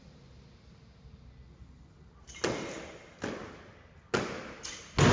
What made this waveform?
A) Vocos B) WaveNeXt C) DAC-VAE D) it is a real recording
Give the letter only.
D